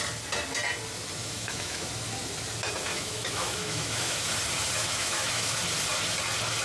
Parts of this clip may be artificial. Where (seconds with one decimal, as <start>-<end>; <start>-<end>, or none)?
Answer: 1.2-1.9; 2.9-4.3; 4.8-5.6